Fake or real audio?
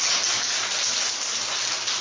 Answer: real